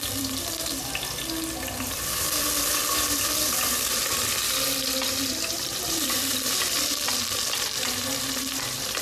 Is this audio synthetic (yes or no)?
yes